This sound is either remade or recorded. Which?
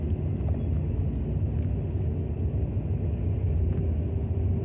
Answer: recorded